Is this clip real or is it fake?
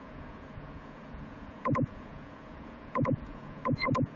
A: fake